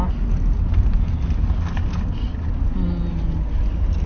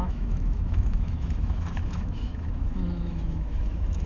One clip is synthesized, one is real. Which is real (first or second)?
first